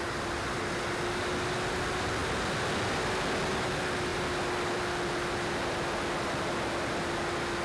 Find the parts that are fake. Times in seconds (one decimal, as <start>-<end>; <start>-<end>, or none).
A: none